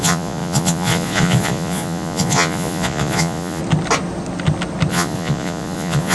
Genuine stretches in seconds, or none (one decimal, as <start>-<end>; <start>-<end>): 3.6-4.9